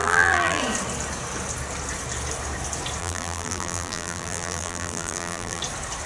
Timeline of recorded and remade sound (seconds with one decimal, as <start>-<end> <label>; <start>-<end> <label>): 0.0-0.6 remade; 0.6-3.0 recorded; 3.0-5.6 remade; 5.6-6.1 recorded